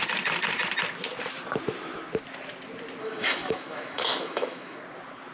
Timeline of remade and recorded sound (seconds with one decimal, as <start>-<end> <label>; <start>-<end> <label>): 0.0-3.0 recorded; 3.0-4.8 remade; 4.8-5.3 recorded